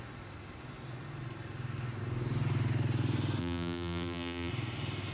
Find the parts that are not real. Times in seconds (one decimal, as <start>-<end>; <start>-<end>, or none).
3.4-4.5